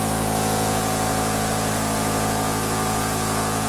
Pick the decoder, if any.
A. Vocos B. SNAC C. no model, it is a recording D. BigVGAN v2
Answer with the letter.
A